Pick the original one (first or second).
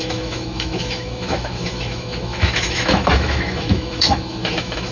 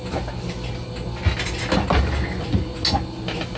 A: second